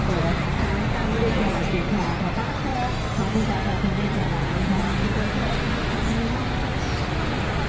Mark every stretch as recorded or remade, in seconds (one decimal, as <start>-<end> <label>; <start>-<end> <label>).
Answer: 0.0-4.2 recorded; 4.2-4.8 remade; 4.8-7.7 recorded